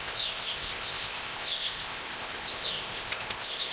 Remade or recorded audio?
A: remade